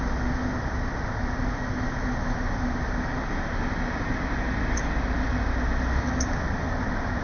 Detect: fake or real real